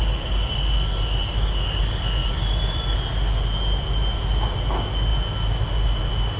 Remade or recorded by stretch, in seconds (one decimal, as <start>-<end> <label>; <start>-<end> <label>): 0.0-6.4 recorded